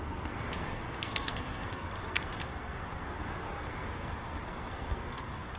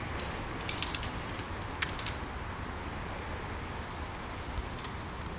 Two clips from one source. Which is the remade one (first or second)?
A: first